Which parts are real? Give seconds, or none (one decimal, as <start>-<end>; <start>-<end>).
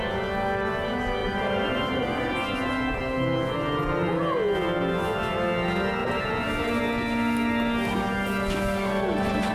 0.0-1.2; 3.0-6.0; 6.8-9.5